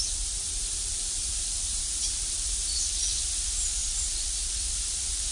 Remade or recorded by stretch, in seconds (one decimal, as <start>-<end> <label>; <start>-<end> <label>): 0.0-5.3 remade